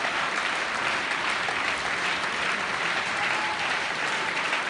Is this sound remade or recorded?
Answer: remade